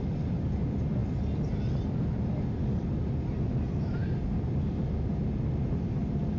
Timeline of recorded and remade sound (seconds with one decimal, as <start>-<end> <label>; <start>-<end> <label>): 0.0-6.4 recorded